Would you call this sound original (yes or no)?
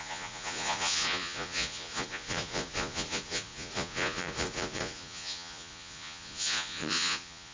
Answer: no